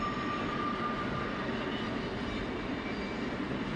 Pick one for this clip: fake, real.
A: real